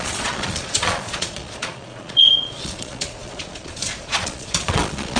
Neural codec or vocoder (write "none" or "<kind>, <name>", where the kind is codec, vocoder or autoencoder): vocoder, Vocos